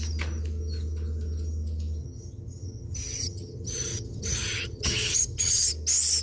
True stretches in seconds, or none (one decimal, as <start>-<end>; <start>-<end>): 0.0-2.0; 5.7-6.2